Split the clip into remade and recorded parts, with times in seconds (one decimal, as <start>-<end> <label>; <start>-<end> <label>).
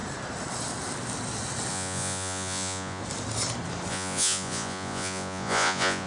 0.0-1.7 recorded; 1.7-3.0 remade; 3.0-3.9 recorded; 3.9-6.1 remade